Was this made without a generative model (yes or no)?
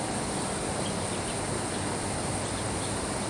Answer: yes